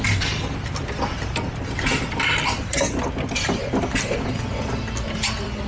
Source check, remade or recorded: recorded